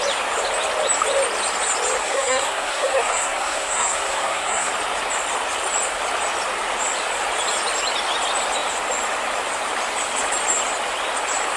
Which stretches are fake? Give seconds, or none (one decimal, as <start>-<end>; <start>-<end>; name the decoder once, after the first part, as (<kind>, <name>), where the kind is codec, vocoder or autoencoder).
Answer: 2.0-4.7 (codec, SNAC)

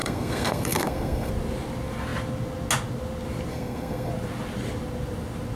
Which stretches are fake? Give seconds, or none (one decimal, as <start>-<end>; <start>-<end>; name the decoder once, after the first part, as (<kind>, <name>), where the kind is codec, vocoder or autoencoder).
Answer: 0.0-1.3 (codec, SNAC); 3.5-4.1

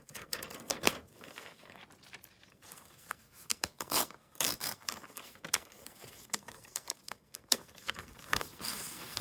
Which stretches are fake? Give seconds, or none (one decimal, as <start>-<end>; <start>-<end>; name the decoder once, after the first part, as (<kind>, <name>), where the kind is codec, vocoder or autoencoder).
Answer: 0.0-1.8 (codec, SNAC); 2.5-9.2

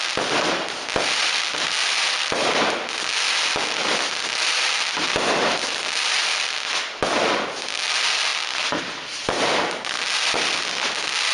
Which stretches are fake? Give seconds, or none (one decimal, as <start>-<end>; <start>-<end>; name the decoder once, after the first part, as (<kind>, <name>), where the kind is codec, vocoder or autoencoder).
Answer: none

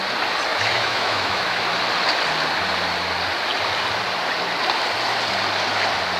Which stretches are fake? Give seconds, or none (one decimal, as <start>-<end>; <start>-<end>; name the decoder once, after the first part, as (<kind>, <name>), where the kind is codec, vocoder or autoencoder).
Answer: 0.5-1.6 (autoencoder, DAC-VAE)

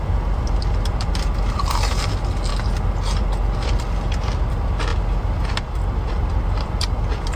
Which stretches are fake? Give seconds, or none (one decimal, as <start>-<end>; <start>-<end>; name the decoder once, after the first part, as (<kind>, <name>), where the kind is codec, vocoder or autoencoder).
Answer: 0.0-2.5 (vocoder, BigVGAN v2); 3.2-7.4